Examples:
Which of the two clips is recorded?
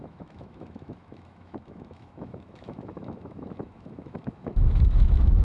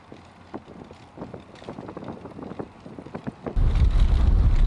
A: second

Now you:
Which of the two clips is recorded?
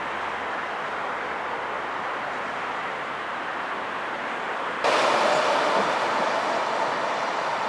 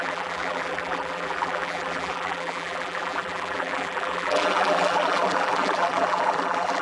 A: first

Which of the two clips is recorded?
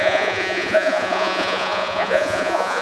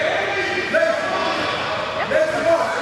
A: second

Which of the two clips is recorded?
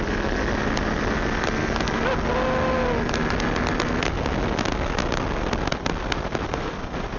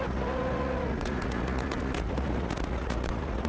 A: first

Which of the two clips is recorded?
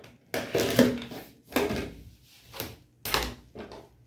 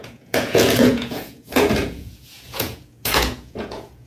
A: first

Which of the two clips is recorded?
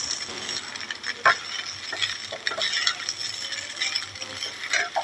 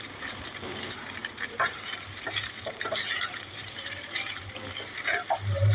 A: first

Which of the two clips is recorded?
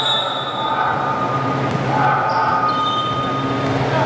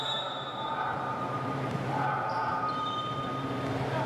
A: first